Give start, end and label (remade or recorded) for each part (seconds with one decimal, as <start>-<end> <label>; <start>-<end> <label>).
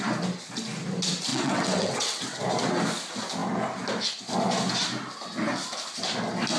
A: 0.0-1.3 recorded; 1.3-2.4 remade; 2.4-6.6 recorded